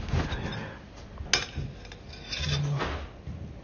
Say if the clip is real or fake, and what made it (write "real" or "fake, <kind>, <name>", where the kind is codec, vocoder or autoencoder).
real